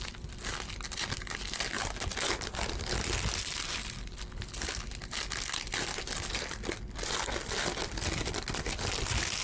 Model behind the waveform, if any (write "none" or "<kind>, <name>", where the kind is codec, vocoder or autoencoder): none